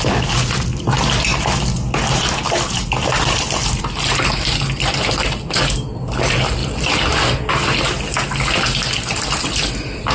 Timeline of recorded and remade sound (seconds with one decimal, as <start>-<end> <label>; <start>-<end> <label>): 0.0-10.1 recorded